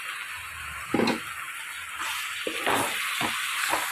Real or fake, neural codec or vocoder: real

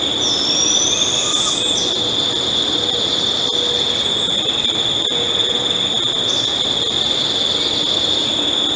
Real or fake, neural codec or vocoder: real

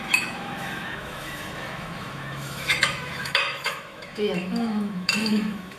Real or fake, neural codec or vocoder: fake, autoencoder, DAC-VAE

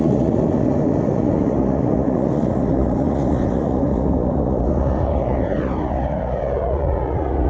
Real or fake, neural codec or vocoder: fake, vocoder, Vocos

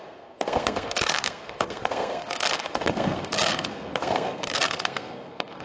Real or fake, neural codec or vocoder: fake, codec, SNAC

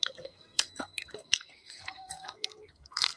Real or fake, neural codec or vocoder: fake, codec, SNAC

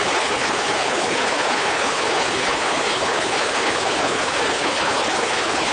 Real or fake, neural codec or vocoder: fake, codec, HILCodec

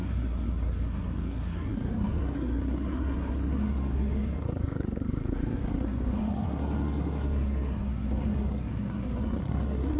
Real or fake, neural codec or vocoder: fake, codec, SNAC